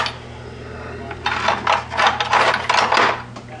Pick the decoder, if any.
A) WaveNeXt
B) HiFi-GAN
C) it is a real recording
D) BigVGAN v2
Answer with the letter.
C